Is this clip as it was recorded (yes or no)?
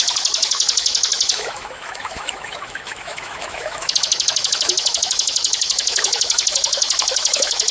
no